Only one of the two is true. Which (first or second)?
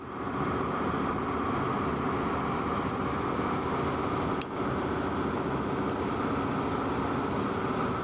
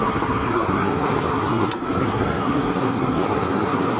first